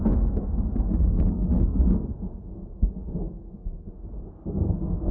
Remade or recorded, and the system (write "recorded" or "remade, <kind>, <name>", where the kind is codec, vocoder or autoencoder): remade, codec, SNAC